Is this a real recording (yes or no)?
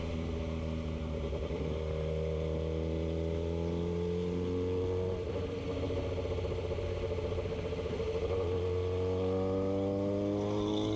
yes